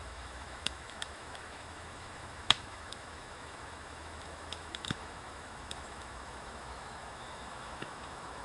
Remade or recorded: remade